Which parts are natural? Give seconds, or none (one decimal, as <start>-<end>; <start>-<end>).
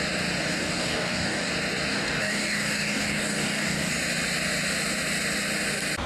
0.0-0.4; 1.5-1.9; 3.9-6.1